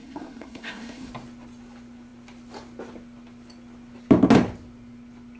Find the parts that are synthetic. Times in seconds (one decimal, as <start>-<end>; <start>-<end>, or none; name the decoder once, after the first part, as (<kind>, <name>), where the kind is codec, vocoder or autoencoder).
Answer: 0.0-1.1 (codec, SNAC)